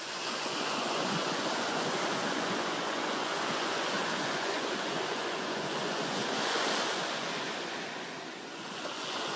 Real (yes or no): no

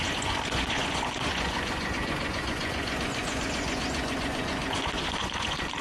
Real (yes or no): no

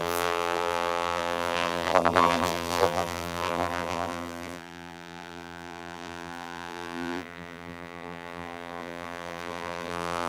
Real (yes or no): no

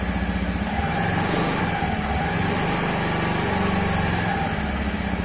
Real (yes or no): yes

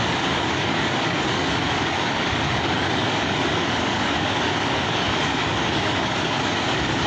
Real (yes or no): no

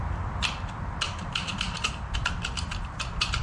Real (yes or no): yes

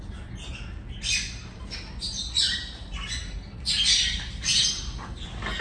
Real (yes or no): yes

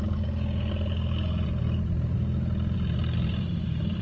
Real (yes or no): yes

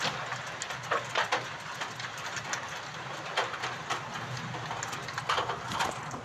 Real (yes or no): yes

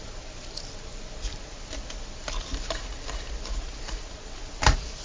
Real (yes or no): no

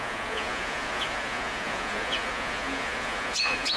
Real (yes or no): no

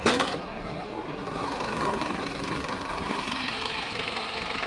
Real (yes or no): no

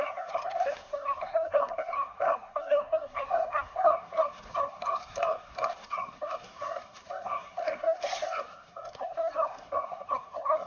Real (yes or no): no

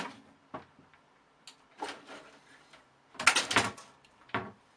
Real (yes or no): yes